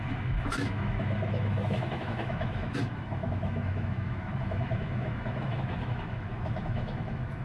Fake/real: fake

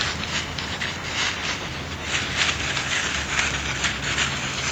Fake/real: real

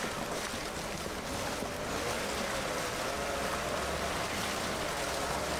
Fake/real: real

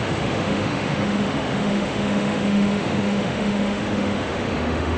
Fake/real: fake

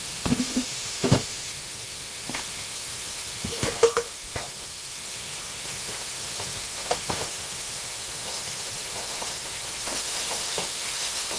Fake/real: fake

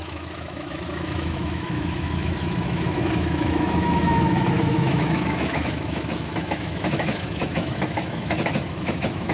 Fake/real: fake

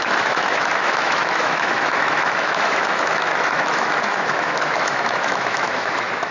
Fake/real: fake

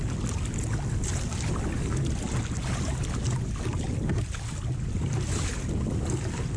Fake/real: real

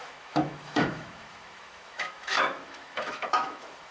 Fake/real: fake